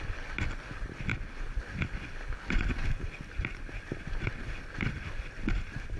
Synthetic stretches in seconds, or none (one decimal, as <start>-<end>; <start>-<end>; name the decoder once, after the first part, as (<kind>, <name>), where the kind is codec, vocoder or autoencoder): none